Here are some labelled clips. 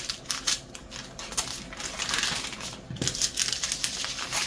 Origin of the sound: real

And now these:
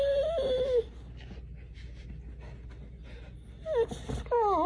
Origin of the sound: real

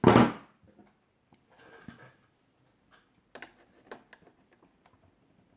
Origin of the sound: real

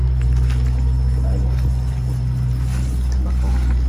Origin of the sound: real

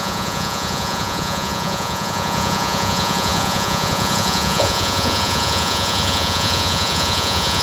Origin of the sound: fake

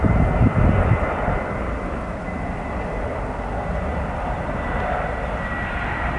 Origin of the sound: real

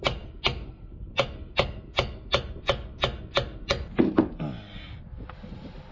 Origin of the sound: real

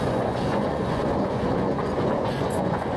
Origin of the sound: fake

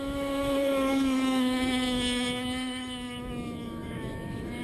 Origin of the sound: fake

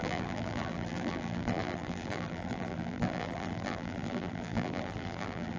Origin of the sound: fake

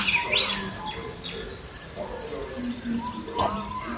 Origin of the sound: real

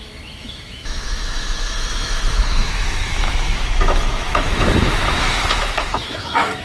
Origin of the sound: fake